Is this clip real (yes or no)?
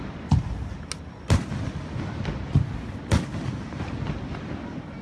yes